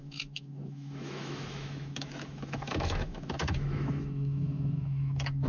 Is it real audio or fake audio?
fake